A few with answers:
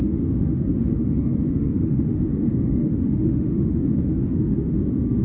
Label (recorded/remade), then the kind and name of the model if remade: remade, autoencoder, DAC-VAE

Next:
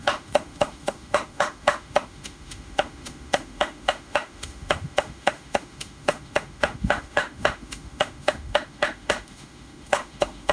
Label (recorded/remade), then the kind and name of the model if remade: remade, autoencoder, DAC-VAE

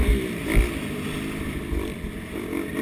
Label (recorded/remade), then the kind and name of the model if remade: recorded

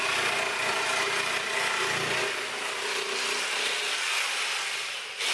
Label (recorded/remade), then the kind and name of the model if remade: recorded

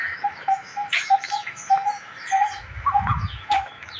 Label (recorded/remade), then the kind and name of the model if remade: remade, autoencoder, DAC-VAE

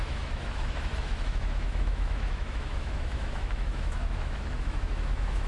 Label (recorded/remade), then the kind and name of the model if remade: remade, autoencoder, DAC-VAE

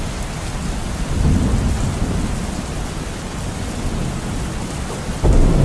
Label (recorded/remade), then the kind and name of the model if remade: recorded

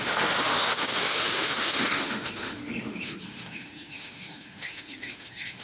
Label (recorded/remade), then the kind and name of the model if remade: remade, autoencoder, DAC-VAE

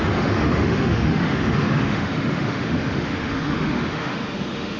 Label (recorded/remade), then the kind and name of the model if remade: remade, autoencoder, DAC-VAE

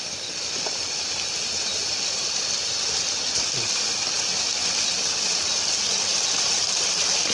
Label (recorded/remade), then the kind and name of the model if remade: recorded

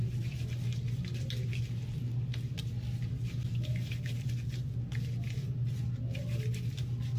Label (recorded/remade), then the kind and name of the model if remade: recorded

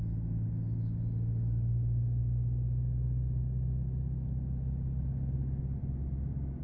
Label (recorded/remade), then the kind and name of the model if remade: recorded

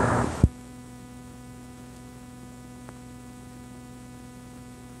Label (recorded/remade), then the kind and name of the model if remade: remade, autoencoder, DAC-VAE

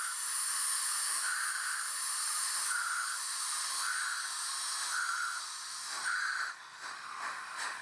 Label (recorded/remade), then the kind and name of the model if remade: remade, autoencoder, DAC-VAE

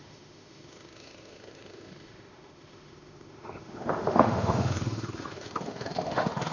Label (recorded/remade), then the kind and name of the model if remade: remade, autoencoder, DAC-VAE